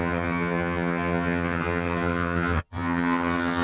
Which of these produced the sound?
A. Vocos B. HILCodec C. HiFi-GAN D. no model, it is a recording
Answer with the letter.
C